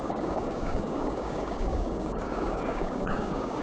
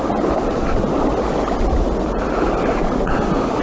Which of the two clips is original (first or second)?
second